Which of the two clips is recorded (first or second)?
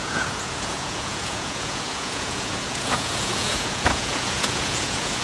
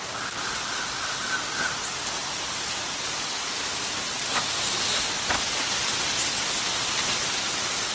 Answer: second